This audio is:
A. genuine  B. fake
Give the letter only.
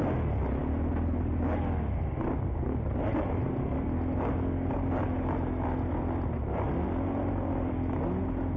A